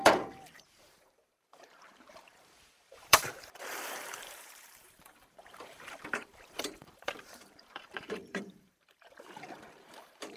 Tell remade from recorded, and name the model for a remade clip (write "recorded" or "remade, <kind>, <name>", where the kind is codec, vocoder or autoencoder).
remade, vocoder, BigVGAN v2